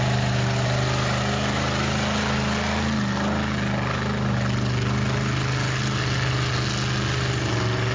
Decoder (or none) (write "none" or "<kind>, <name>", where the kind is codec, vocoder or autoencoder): none